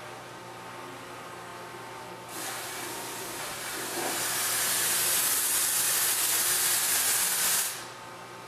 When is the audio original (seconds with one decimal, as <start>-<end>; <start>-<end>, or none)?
0.0-8.5